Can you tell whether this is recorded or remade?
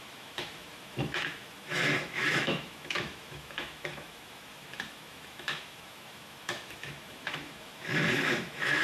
remade